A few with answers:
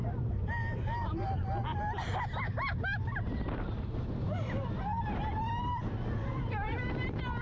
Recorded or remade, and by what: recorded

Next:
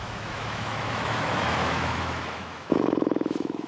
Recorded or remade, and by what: remade, autoencoder, DAC-VAE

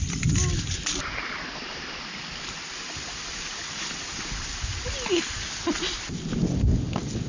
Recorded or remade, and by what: recorded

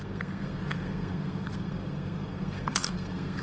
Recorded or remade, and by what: remade, codec, SNAC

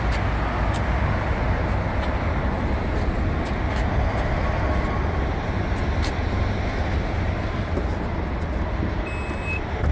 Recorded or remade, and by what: recorded